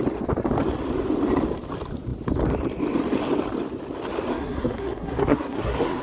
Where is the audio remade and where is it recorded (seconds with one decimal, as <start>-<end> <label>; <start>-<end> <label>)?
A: 0.0-4.3 recorded; 4.3-6.0 remade